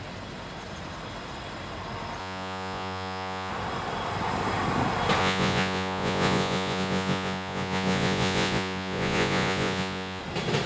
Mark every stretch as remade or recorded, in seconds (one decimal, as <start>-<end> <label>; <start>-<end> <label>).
0.0-2.2 recorded; 2.2-3.5 remade; 3.5-5.2 recorded; 5.2-10.2 remade; 10.2-10.7 recorded